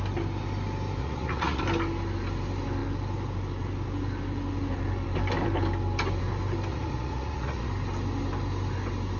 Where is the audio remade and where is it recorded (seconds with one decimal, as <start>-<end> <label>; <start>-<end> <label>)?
0.0-1.0 recorded; 1.0-1.6 remade; 1.6-6.7 recorded; 6.7-7.7 remade; 7.7-9.2 recorded

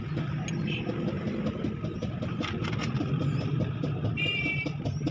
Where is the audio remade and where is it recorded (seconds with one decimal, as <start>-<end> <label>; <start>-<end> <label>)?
0.0-5.1 recorded

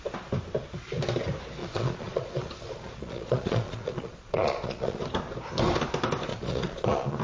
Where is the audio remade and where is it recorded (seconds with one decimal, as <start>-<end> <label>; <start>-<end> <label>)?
0.0-1.6 recorded; 1.6-5.0 remade; 5.0-6.3 recorded; 6.3-7.2 remade

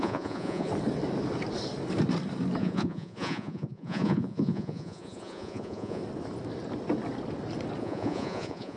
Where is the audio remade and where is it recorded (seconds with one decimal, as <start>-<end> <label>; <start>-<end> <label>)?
0.0-0.7 remade; 0.7-2.6 recorded; 2.6-6.0 remade; 6.0-7.8 recorded; 7.8-8.8 remade

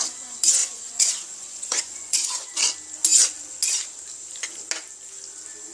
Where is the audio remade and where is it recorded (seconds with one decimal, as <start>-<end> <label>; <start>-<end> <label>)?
0.0-0.6 recorded; 0.6-2.6 remade; 2.6-5.7 recorded

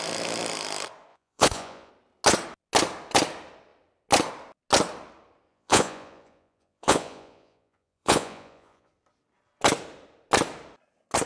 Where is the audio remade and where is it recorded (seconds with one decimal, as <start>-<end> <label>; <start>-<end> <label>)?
0.0-1.1 recorded; 1.1-1.9 remade; 1.9-5.5 recorded; 5.5-8.9 remade; 8.9-11.3 recorded